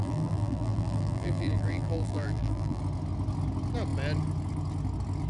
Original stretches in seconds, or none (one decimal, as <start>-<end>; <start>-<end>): 2.8-5.3